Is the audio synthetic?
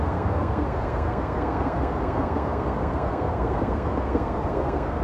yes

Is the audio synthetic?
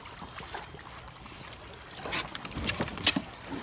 no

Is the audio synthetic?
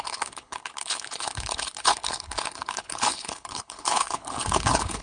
yes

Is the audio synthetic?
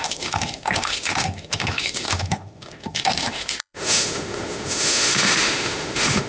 yes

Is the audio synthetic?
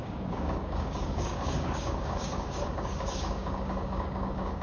yes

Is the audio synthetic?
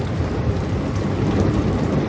no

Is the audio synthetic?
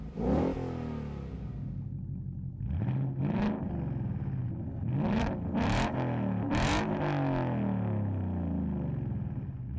no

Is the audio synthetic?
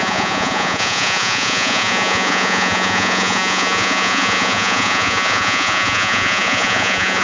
yes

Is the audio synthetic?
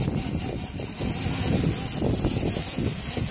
no